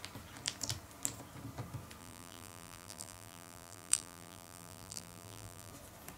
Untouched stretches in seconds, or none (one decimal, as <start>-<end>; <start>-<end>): 0.0-2.0; 5.7-6.2